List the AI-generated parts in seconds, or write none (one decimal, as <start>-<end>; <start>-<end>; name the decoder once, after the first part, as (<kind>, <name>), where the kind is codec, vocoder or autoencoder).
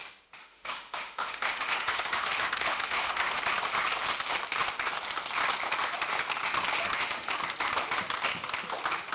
0.4-3.4 (autoencoder, DAC-VAE); 6.8-7.4